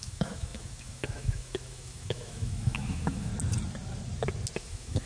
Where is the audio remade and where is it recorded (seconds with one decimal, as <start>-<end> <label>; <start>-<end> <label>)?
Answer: 0.0-3.3 remade; 3.3-4.6 recorded; 4.6-5.1 remade